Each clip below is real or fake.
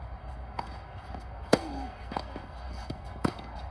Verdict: fake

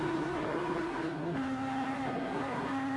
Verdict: fake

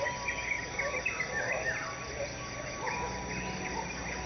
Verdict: real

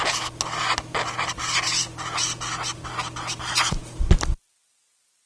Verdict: real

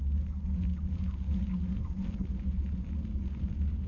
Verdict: real